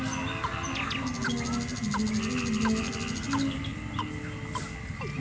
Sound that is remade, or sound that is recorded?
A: recorded